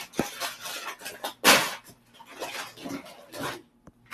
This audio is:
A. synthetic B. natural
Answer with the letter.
B